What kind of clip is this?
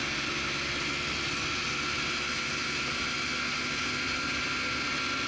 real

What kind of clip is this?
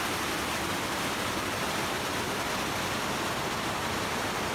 real